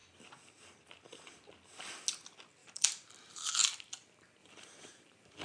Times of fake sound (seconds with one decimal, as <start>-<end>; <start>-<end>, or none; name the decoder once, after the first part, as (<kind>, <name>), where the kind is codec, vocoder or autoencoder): 2.6-3.5 (vocoder, BigVGAN v2); 4.4-5.4